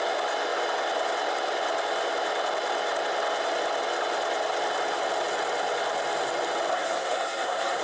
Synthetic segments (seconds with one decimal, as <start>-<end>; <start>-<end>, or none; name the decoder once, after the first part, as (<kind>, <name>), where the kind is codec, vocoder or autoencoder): 6.7-7.8 (codec, SNAC)

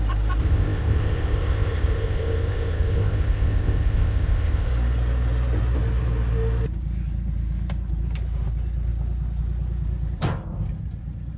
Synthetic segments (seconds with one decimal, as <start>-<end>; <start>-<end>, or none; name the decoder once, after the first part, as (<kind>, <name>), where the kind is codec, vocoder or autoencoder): 0.4-4.7 (codec, ZipCodec)

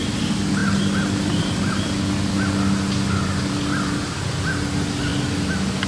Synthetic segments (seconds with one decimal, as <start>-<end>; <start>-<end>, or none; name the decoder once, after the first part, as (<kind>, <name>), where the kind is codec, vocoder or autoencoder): none

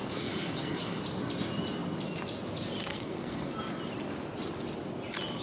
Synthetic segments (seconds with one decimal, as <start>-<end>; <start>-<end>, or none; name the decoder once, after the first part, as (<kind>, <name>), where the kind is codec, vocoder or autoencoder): 0.0-1.0 (codec, SNAC); 2.9-3.5